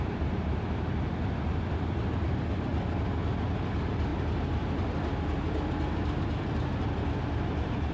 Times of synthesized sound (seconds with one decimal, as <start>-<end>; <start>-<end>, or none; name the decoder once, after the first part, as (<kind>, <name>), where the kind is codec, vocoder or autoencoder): 0.0-2.7 (vocoder, BigVGAN v2); 3.5-7.9